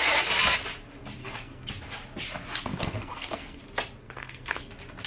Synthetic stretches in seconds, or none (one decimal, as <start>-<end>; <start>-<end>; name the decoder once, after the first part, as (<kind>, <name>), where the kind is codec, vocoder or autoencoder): 1.2-1.7 (codec, SNAC); 2.7-3.6; 4.0-4.6